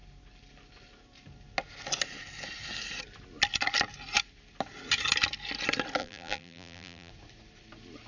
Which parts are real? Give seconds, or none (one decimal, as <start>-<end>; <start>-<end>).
0.0-6.0; 7.1-8.1